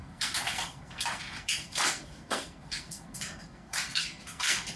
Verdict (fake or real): fake